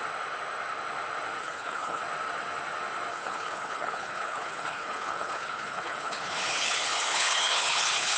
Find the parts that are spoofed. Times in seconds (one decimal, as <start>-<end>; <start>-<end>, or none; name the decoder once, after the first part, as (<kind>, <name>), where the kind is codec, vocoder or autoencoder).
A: 1.4-2.0 (codec, HILCodec); 3.1-8.2